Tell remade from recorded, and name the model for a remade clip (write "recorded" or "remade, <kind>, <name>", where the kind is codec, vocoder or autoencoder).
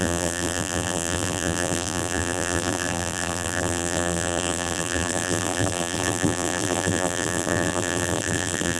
remade, vocoder, BigVGAN v2